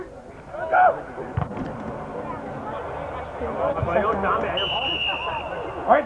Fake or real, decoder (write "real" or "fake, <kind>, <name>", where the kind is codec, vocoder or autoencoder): real